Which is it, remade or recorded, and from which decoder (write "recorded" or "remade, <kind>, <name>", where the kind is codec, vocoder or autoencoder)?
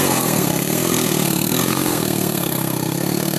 remade, codec, SNAC